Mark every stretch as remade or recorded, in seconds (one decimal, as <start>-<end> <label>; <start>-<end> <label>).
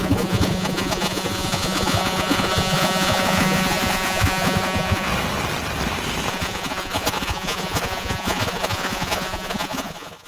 0.0-5.1 remade; 5.1-6.3 recorded; 6.3-10.3 remade